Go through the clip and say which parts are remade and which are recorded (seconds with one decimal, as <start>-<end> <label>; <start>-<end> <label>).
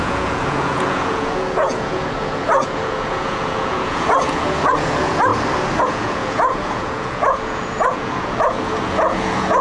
0.0-5.3 remade; 5.3-5.8 recorded; 5.8-9.6 remade